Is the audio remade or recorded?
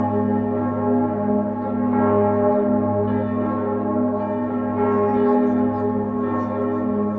recorded